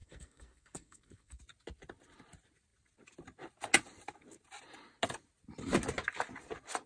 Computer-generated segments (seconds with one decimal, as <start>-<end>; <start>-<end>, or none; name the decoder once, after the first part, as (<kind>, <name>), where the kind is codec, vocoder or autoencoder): 0.0-1.4 (codec, SNAC)